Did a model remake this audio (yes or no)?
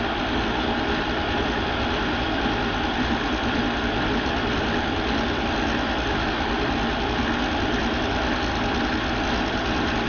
no